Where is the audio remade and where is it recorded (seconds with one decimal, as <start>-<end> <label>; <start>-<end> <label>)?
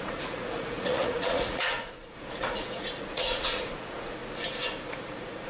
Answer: 0.0-4.2 remade; 4.2-5.0 recorded; 5.0-5.5 remade